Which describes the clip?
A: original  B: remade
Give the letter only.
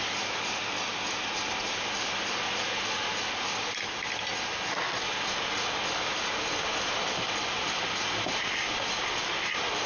A